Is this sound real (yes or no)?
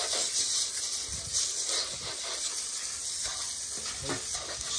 yes